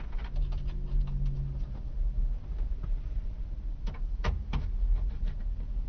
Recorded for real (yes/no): yes